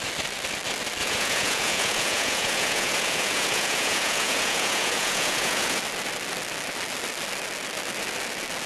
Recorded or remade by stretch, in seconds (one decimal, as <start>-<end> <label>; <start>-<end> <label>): 0.0-1.0 recorded; 1.0-5.8 remade; 5.8-8.7 recorded